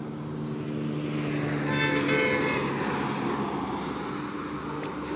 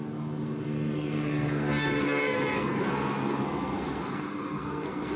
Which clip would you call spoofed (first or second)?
second